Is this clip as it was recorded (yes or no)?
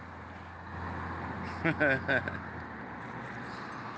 yes